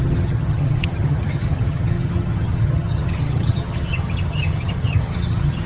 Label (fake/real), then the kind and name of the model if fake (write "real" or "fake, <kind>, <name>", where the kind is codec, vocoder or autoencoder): fake, vocoder, HiFi-GAN